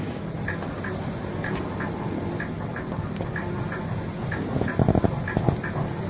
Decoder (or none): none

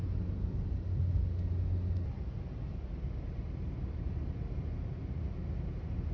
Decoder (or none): none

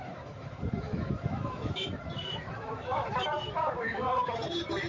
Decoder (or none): autoencoder, DAC-VAE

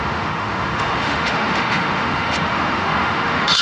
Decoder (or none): autoencoder, DAC-VAE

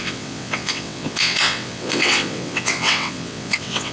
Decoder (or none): vocoder, WaveNeXt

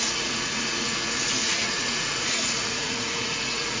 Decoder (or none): vocoder, Vocos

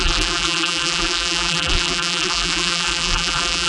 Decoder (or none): vocoder, BigVGAN v2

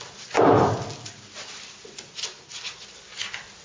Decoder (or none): none